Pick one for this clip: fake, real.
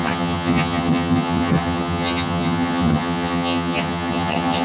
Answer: fake